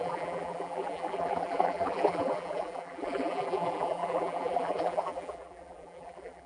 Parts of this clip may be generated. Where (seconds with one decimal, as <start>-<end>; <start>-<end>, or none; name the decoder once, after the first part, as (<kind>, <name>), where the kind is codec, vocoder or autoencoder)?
0.0-6.5 (vocoder, BigVGAN v2)